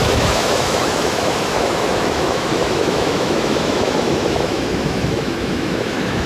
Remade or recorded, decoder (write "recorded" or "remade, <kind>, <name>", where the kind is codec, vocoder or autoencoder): remade, autoencoder, DAC-VAE